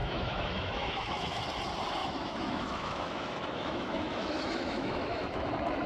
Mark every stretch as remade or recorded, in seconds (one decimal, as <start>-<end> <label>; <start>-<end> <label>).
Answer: 0.0-1.4 remade; 1.4-2.0 recorded; 2.0-5.5 remade; 5.5-5.9 recorded